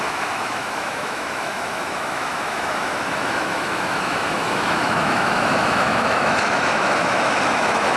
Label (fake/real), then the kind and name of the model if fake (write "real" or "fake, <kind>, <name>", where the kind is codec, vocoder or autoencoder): fake, autoencoder, DAC-VAE